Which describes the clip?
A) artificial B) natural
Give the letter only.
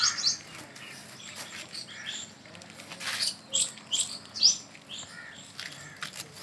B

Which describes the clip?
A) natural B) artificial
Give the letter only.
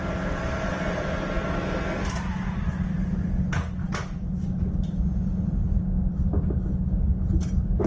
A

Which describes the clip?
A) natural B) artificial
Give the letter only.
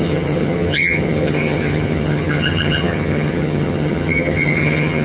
B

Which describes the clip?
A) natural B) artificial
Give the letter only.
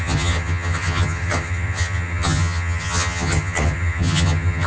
B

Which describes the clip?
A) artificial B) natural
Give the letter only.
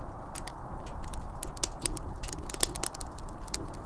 B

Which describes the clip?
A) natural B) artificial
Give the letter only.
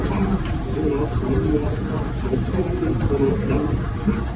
A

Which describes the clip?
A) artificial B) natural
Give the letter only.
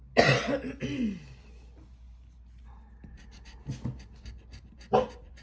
B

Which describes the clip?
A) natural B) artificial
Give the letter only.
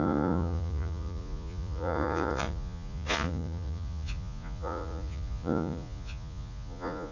B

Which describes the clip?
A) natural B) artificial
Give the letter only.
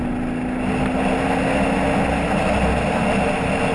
A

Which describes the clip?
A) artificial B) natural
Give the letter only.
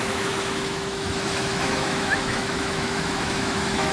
A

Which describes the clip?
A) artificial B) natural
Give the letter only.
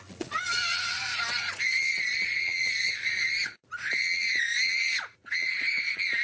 A